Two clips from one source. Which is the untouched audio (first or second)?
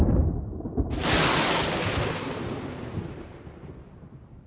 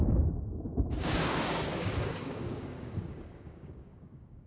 first